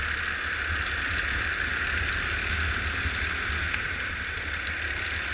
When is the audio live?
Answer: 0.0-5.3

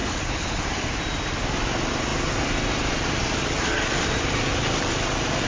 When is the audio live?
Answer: 0.9-5.5

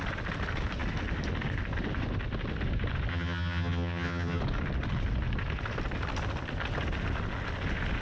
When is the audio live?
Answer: 0.0-3.1; 4.4-8.0

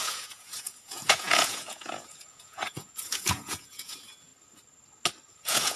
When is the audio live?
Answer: 4.3-5.3

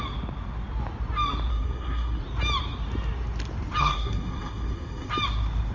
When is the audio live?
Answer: 0.0-1.5; 2.2-3.8; 5.1-5.7

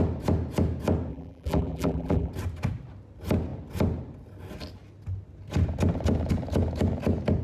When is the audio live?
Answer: 0.0-1.1; 2.3-7.4

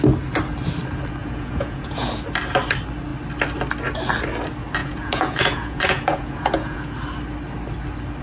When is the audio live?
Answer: 0.0-1.2; 2.1-4.8; 6.9-8.2